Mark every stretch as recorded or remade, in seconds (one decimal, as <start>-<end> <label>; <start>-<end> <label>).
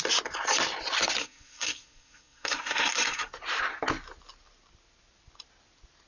0.0-1.2 recorded; 1.2-3.3 remade; 3.3-6.1 recorded